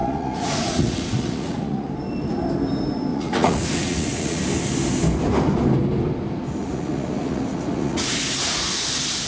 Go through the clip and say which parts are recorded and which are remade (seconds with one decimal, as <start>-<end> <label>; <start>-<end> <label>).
0.0-1.9 remade; 1.9-3.1 recorded; 3.1-4.4 remade; 4.4-6.6 recorded; 6.6-8.8 remade; 8.8-9.3 recorded